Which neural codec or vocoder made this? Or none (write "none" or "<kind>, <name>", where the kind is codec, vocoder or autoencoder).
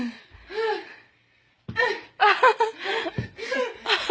none